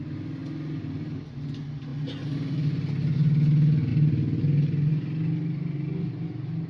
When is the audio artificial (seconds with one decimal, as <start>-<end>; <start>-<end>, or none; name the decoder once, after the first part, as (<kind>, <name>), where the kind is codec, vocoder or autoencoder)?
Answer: none